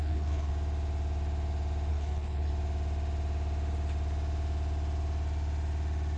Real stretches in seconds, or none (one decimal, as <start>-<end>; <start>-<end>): 0.5-1.9; 2.5-6.2